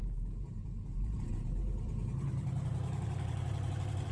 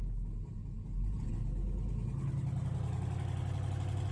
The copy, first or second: first